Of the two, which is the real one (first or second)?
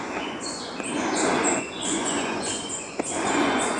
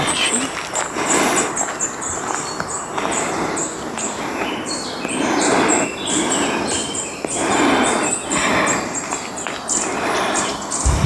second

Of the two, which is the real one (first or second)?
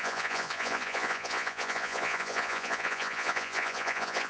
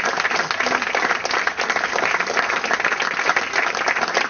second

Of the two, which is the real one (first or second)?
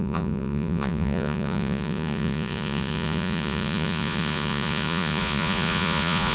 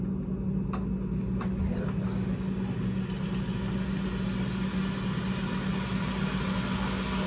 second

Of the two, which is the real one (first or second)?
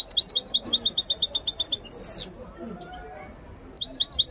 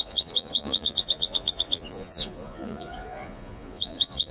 first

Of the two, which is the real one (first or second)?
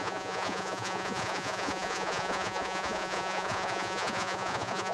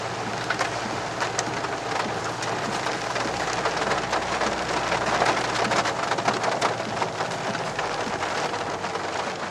second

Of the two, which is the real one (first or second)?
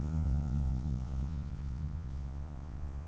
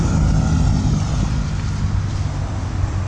second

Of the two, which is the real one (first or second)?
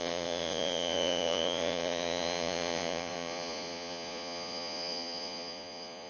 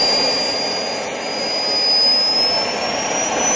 second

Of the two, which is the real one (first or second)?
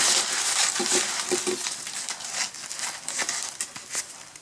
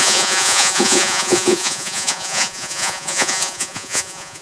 first